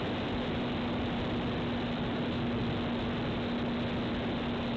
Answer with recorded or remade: recorded